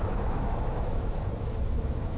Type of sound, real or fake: fake